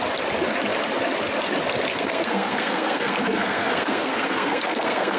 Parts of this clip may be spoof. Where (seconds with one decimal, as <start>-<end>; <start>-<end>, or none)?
1.9-5.2

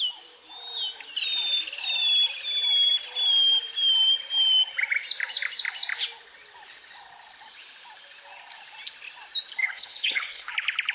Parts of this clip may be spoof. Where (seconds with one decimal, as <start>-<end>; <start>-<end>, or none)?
9.6-10.5

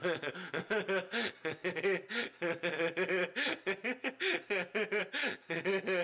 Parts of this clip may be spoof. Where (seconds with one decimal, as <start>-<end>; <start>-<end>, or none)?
none

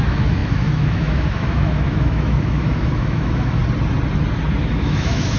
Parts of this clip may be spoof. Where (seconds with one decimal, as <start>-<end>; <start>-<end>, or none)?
0.0-3.6; 4.6-5.4

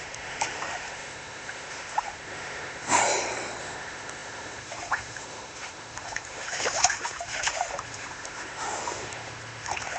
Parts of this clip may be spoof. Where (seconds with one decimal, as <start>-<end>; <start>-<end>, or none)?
0.0-3.0; 3.6-10.0